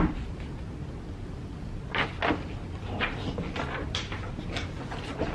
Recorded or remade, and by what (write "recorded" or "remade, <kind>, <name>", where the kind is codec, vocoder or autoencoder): recorded